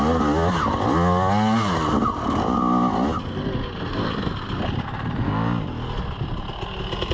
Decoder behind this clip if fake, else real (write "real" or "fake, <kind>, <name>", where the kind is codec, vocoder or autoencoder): real